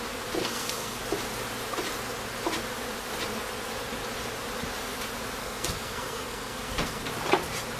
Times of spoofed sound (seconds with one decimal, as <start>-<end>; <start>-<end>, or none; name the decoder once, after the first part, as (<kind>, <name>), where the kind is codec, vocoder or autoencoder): 0.4-1.0 (codec, SNAC); 5.4-7.1